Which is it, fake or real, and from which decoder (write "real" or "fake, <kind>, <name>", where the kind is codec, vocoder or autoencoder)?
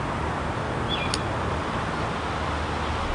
real